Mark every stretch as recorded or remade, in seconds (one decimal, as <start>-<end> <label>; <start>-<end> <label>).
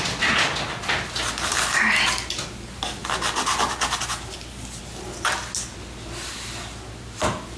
0.0-7.6 recorded